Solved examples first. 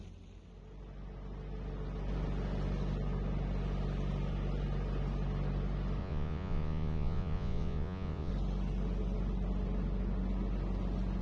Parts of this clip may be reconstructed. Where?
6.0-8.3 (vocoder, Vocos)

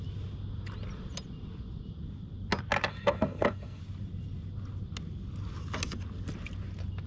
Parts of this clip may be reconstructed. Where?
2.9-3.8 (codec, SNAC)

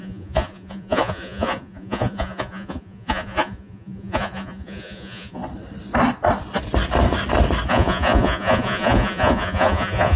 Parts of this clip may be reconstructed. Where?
0.0-5.4 (vocoder, Vocos); 7.7-10.2